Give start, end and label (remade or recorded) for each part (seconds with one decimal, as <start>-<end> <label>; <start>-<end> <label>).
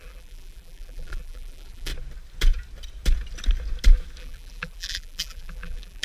0.0-1.9 remade; 1.9-4.2 recorded; 4.2-6.0 remade